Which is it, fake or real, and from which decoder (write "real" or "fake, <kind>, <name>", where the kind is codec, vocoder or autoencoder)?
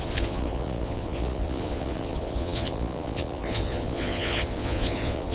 fake, vocoder, Vocos